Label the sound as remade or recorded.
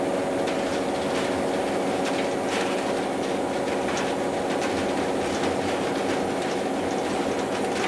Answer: recorded